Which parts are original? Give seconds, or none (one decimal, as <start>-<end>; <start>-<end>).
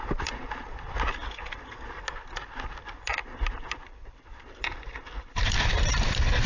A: 0.9-3.1; 4.9-6.5